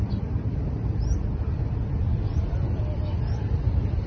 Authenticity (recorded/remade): recorded